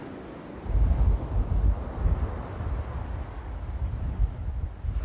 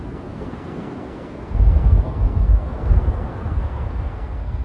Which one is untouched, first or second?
first